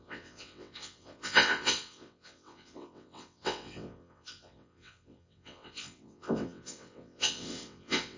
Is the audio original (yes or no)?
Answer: no